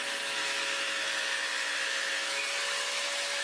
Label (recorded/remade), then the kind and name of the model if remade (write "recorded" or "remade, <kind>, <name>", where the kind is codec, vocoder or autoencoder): remade, autoencoder, DAC-VAE